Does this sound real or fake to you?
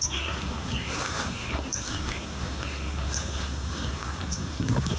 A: fake